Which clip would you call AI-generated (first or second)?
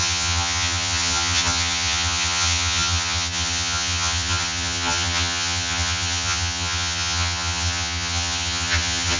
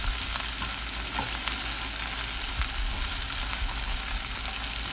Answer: first